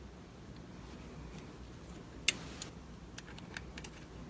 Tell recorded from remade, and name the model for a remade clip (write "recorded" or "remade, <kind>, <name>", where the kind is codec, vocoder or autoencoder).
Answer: recorded